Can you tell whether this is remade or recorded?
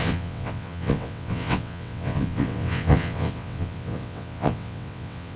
remade